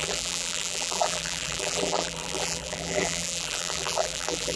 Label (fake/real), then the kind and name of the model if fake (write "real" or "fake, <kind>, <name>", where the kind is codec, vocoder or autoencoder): fake, vocoder, BigVGAN v2